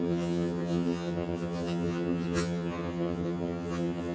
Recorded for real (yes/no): no